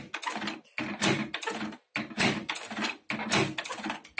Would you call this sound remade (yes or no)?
no